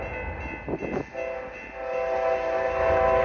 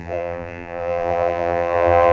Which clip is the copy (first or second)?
second